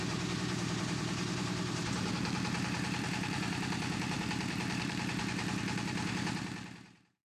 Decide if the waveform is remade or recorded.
remade